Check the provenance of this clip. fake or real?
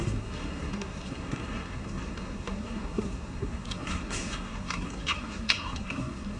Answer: fake